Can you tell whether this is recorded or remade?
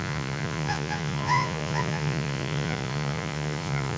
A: remade